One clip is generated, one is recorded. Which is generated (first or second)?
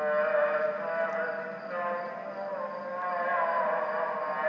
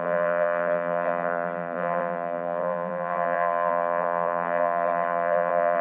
second